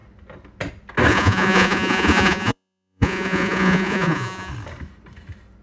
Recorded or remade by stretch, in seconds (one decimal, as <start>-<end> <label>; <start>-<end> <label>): 0.0-1.1 recorded; 1.1-4.5 remade; 4.5-5.6 recorded